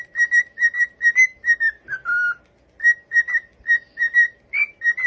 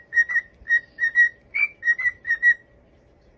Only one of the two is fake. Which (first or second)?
second